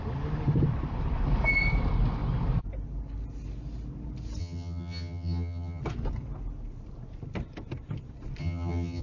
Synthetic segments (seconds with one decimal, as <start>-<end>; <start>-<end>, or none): 4.4-5.8; 8.4-9.0